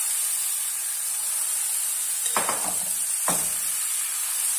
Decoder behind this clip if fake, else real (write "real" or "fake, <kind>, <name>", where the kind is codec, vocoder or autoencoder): real